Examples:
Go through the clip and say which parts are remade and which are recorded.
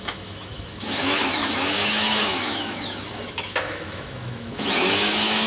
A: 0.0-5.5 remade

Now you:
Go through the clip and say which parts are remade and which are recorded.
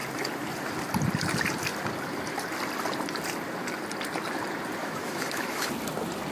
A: 0.0-4.8 recorded; 4.8-5.7 remade; 5.7-6.3 recorded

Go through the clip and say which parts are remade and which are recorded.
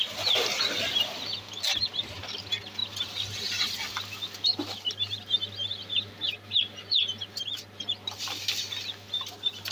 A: 0.0-9.7 recorded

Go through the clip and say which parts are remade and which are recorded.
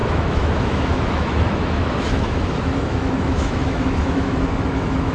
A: 0.0-5.1 remade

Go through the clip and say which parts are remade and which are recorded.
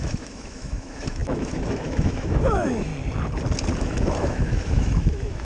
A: 0.0-2.9 remade; 2.9-3.8 recorded; 3.8-5.4 remade